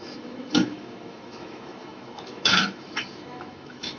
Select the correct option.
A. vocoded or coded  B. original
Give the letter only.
A